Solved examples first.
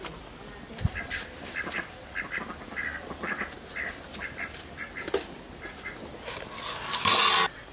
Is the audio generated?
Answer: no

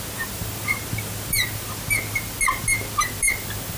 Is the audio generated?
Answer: no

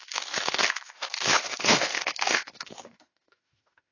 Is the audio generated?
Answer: yes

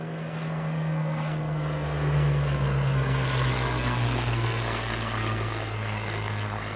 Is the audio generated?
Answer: yes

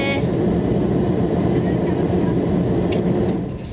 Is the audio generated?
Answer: no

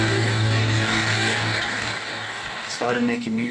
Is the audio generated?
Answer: yes